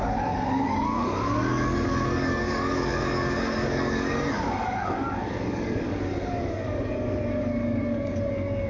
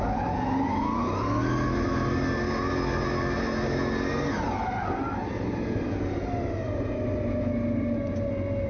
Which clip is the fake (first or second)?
first